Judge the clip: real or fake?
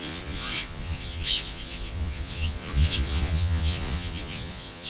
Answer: fake